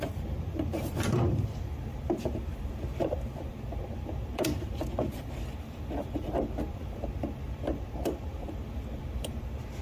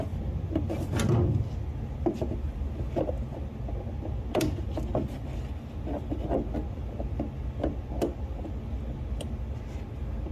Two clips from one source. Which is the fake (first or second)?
first